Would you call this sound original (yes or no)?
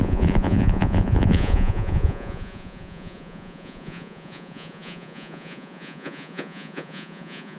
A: no